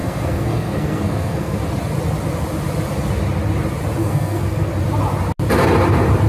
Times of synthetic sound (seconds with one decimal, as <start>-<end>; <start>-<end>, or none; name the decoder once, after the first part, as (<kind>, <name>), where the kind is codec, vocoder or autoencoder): 0.0-1.6 (codec, SNAC); 4.0-4.7